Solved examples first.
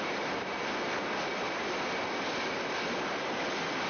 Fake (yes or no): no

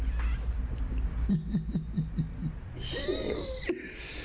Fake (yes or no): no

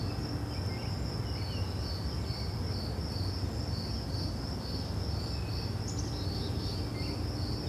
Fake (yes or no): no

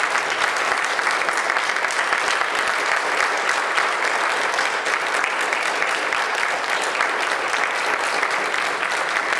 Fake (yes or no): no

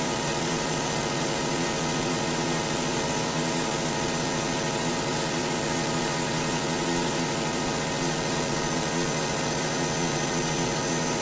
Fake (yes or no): yes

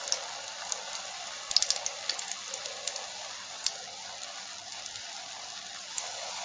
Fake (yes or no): no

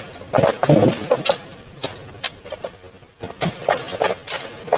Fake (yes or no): no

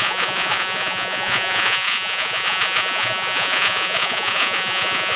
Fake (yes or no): yes